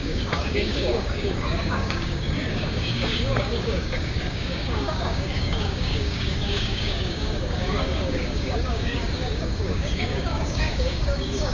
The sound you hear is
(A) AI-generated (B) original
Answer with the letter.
A